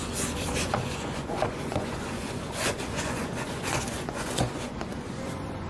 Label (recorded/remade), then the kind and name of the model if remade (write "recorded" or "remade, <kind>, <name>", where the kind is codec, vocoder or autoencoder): remade, vocoder, Vocos